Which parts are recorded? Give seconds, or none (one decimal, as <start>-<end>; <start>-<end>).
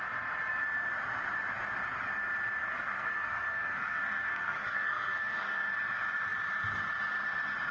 0.0-2.6; 5.7-7.7